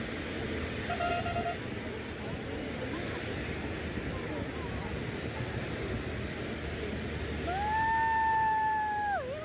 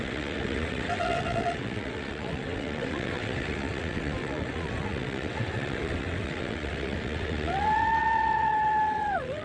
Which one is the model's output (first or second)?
second